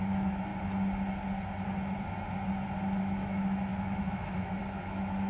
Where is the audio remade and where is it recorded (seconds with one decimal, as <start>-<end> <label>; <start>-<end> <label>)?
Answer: 0.0-0.5 remade; 0.5-3.0 recorded; 3.0-5.3 remade